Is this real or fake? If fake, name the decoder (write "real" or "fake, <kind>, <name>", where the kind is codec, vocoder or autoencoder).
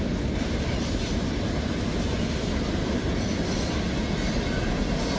real